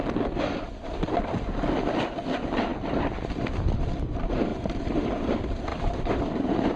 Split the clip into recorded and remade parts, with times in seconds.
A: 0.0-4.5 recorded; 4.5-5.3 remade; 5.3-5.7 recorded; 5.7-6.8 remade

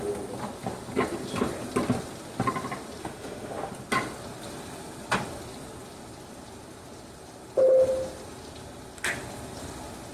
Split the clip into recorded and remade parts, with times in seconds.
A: 0.0-3.0 recorded; 3.0-3.7 remade; 3.7-10.1 recorded

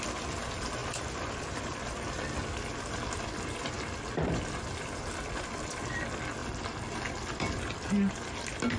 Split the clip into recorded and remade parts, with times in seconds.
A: 0.0-0.8 recorded; 0.8-4.7 remade; 4.7-8.8 recorded

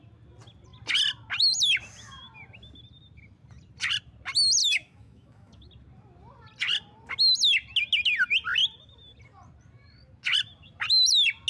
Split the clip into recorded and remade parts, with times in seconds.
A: 0.0-4.6 recorded; 4.6-5.7 remade; 5.7-11.5 recorded